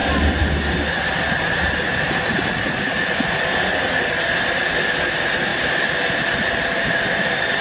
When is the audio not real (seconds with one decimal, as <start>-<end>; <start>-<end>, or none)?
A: 0.0-2.1; 5.5-7.6